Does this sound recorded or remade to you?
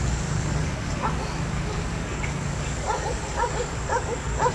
remade